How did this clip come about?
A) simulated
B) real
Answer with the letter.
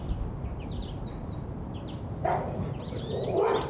B